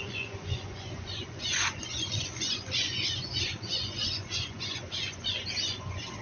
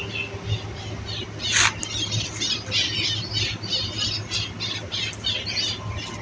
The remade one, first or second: first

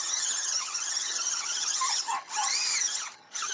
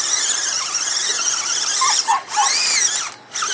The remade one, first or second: first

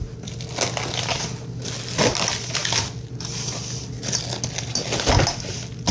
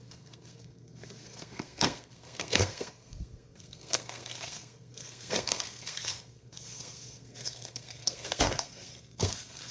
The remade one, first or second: second